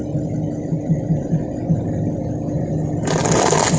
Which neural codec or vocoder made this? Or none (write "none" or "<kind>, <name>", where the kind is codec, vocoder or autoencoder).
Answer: none